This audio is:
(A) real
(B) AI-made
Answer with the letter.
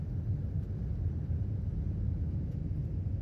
A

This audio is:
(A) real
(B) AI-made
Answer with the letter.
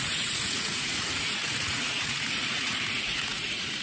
B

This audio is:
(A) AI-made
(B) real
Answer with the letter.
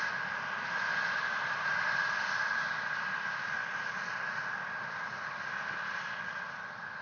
B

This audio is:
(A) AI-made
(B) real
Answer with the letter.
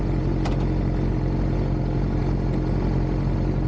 B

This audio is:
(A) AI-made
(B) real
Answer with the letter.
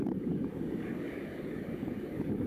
A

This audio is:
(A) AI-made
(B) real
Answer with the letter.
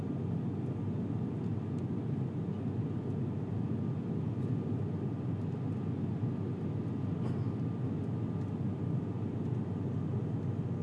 B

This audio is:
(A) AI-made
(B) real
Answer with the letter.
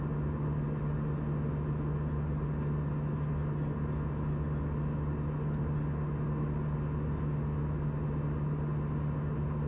B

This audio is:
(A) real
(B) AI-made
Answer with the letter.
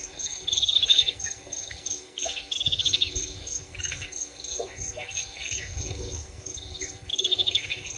B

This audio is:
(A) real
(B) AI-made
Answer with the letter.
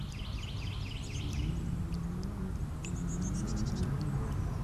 A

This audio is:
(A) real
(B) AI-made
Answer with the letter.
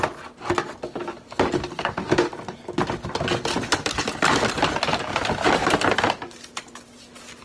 A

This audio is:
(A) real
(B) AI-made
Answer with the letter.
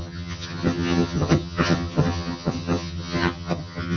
B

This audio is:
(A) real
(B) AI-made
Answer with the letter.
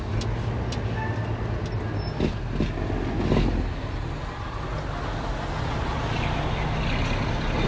A